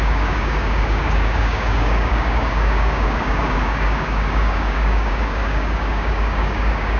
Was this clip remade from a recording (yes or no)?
yes